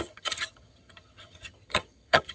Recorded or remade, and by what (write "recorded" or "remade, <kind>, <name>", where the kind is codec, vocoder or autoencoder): remade, vocoder, HiFi-GAN